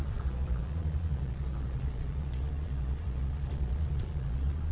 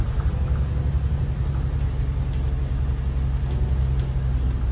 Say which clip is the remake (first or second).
first